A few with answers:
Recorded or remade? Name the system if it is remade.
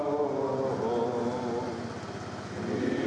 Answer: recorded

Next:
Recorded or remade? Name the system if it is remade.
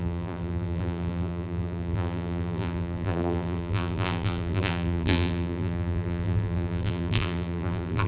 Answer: remade, vocoder, BigVGAN v2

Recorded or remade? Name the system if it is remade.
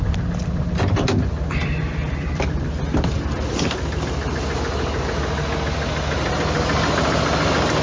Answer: recorded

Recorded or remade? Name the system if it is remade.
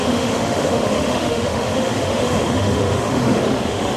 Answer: remade, autoencoder, DAC-VAE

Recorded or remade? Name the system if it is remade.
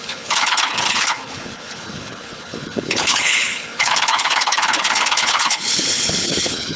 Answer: remade, codec, HILCodec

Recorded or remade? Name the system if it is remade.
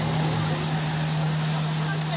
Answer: recorded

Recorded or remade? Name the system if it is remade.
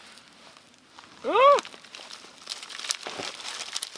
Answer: recorded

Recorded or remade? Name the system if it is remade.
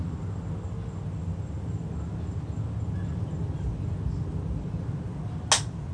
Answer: recorded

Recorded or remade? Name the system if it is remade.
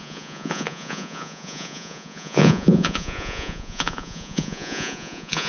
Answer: remade, vocoder, Vocos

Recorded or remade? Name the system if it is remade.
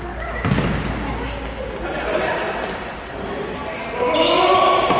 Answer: recorded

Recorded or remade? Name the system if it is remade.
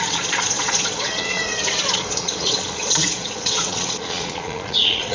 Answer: remade, vocoder, Vocos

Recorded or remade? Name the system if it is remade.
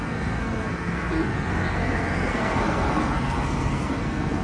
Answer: remade, codec, SNAC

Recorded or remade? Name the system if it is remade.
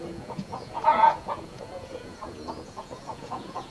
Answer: remade, vocoder, Vocos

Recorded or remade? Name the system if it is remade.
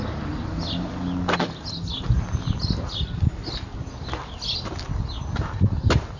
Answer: recorded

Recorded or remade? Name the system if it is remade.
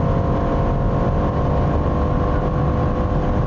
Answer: recorded